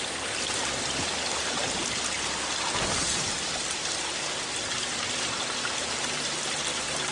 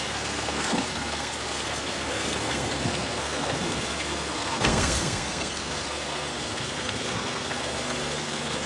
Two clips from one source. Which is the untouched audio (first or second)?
first